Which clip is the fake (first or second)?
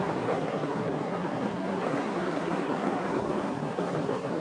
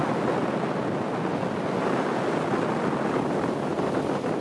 first